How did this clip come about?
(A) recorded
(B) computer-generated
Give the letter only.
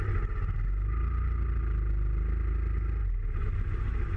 A